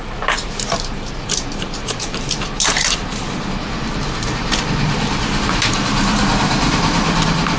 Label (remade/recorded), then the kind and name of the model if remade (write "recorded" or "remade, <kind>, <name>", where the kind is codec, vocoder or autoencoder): remade, vocoder, BigVGAN v2